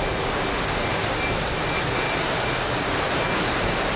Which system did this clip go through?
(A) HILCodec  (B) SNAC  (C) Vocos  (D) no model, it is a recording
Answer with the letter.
D